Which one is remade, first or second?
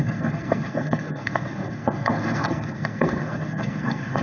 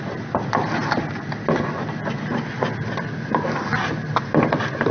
first